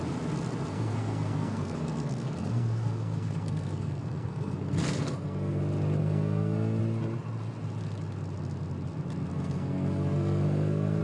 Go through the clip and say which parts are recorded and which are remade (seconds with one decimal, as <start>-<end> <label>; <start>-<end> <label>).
0.0-0.7 recorded; 0.7-5.6 remade; 5.6-6.0 recorded; 6.0-6.8 remade; 6.8-9.3 recorded; 9.3-11.0 remade

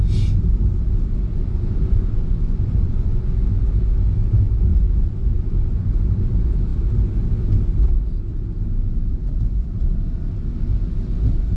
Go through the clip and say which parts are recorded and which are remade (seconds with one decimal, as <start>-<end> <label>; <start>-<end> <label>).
0.0-1.3 recorded; 1.3-3.2 remade; 3.2-4.7 recorded; 4.7-5.9 remade; 5.9-11.6 recorded

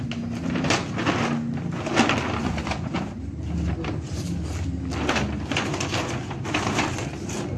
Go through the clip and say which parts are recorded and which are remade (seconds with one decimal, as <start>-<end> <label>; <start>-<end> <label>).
0.0-2.4 recorded; 2.4-3.0 remade; 3.0-7.6 recorded

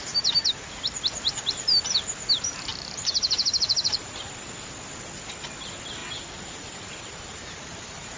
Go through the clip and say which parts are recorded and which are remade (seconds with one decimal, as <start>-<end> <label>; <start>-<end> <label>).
0.0-2.7 recorded; 2.7-4.3 remade; 4.3-6.0 recorded; 6.0-8.2 remade

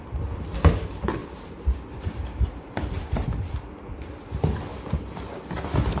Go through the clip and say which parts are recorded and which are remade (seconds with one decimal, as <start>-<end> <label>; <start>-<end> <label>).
0.0-1.2 recorded; 1.2-4.1 remade; 4.1-4.7 recorded; 4.7-5.6 remade; 5.6-6.0 recorded

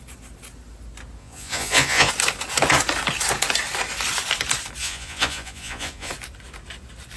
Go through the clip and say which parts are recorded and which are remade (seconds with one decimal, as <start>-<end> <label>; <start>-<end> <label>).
0.0-1.2 recorded; 1.2-2.1 remade; 2.1-4.8 recorded; 4.8-6.1 remade; 6.1-7.2 recorded

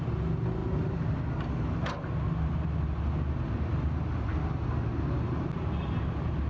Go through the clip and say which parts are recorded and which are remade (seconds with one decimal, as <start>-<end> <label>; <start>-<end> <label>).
0.0-6.5 recorded